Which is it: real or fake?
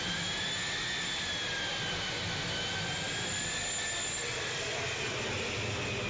real